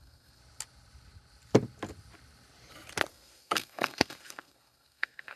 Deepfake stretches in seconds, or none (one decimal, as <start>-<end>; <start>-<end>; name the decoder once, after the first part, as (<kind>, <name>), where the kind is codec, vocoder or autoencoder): 0.0-0.4 (codec, SNAC); 3.1-5.4